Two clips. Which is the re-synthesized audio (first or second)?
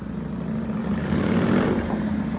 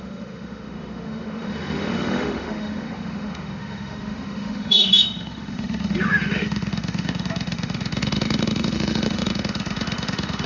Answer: second